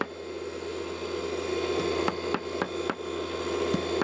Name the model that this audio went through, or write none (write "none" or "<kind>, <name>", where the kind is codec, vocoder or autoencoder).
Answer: none